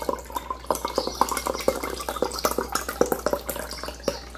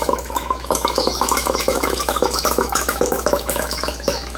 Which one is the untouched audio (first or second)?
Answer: first